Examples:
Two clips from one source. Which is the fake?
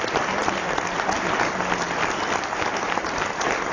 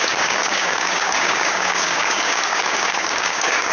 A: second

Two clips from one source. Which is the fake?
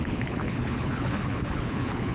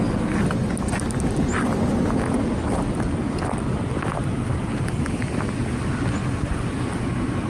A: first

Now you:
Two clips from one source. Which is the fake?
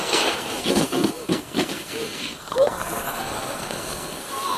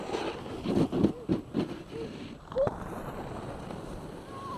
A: first